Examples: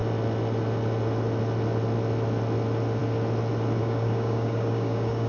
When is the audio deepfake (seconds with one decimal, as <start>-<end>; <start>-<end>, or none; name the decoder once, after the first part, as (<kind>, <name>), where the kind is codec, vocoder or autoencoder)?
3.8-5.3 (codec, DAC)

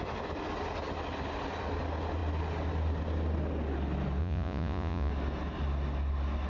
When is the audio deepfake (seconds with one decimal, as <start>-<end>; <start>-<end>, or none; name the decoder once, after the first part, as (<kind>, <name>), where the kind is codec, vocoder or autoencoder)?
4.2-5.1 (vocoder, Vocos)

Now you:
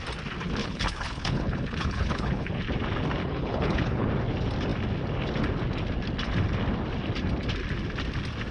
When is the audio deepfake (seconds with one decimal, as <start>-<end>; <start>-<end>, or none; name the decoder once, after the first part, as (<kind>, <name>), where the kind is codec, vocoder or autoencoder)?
0.6-2.6 (codec, HILCodec); 3.2-4.1

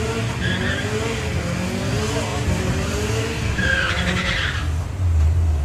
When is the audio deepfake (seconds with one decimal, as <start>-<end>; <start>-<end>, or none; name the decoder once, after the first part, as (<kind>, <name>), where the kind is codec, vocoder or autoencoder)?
2.3-3.9 (vocoder, BigVGAN v2)

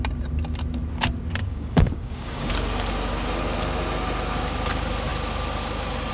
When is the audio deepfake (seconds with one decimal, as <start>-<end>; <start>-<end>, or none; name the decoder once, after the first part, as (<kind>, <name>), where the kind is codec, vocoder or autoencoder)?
1.4-2.5 (codec, DAC)